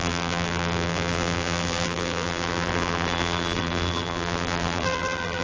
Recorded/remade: remade